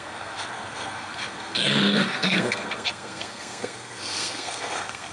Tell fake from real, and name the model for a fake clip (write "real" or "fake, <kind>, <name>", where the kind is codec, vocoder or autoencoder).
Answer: fake, codec, SNAC